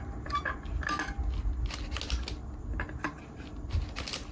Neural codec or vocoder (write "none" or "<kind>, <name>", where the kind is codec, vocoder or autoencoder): none